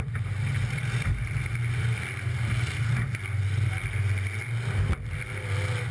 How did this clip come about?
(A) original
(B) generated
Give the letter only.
A